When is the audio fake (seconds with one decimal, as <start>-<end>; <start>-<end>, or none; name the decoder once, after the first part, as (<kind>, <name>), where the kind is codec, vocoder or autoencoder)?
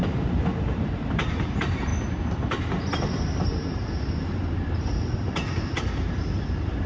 0.0-1.9 (vocoder, BigVGAN v2); 3.4-6.9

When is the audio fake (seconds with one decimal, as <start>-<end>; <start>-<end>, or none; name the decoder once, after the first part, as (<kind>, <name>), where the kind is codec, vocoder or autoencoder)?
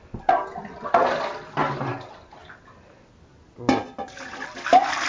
none